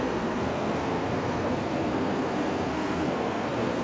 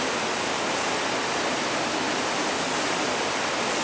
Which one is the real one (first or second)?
second